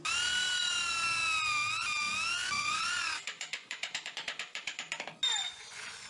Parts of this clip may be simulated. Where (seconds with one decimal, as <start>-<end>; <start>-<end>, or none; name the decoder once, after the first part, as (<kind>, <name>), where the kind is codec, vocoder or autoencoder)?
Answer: 2.4-4.9 (vocoder, Vocos); 5.4-6.1